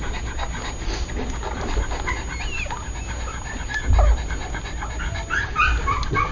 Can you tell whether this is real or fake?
real